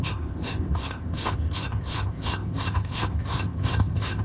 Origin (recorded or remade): remade